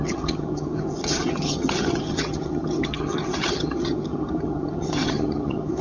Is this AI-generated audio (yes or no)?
yes